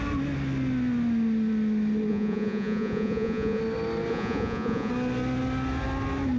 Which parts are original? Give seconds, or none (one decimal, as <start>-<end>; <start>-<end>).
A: 0.0-2.1; 3.6-4.1; 4.9-6.4